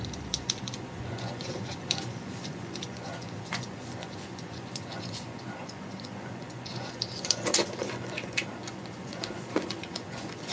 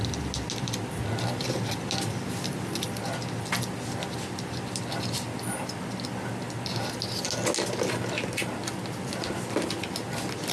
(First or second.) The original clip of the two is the second